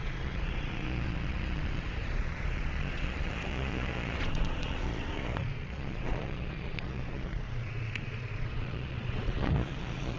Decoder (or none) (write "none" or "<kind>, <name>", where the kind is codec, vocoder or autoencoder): vocoder, Vocos